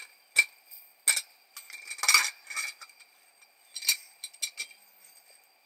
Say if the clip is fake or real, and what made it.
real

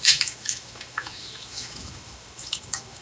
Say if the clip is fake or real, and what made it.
fake, autoencoder, DAC-VAE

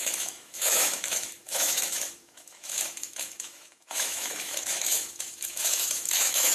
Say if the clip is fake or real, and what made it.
fake, autoencoder, DAC-VAE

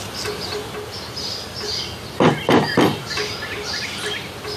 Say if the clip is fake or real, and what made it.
real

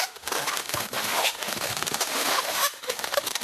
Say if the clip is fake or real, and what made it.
fake, autoencoder, DAC-VAE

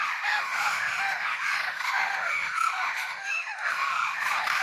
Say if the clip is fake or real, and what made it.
fake, autoencoder, DAC-VAE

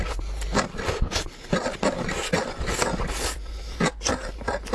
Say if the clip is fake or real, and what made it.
real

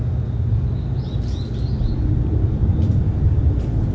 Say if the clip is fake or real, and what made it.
real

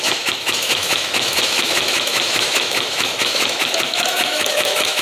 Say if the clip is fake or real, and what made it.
fake, autoencoder, DAC-VAE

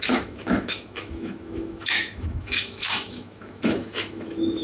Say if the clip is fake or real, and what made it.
fake, autoencoder, DAC-VAE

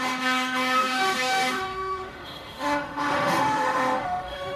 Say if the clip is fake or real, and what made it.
fake, autoencoder, DAC-VAE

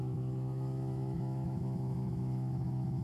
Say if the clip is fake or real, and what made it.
fake, autoencoder, DAC-VAE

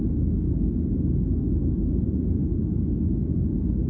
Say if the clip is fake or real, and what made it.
fake, autoencoder, DAC-VAE